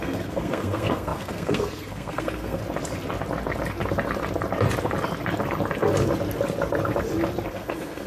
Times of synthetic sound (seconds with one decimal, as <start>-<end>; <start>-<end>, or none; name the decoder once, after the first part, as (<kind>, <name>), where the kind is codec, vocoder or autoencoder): 0.0-2.6 (codec, SNAC); 7.5-8.1